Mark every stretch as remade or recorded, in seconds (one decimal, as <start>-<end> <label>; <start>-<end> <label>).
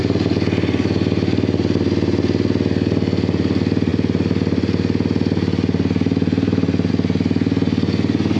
0.0-8.4 recorded